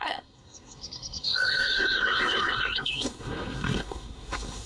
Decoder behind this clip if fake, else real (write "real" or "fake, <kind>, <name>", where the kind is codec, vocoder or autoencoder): fake, codec, SNAC